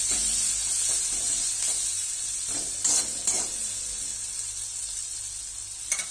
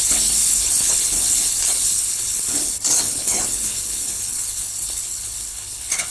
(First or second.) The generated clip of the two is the second